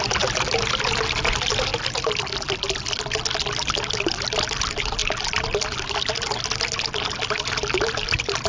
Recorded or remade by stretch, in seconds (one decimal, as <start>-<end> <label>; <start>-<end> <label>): 0.0-1.7 recorded; 1.7-2.3 remade; 2.3-8.5 recorded